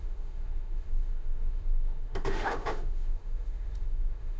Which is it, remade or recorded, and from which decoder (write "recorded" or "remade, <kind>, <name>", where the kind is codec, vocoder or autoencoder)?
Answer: remade, autoencoder, DAC-VAE